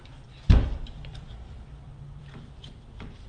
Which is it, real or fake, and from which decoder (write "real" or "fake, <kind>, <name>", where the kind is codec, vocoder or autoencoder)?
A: fake, vocoder, BigVGAN v2